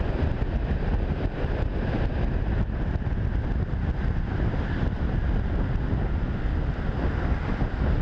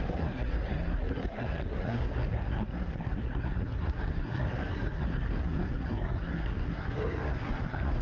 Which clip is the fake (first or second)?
second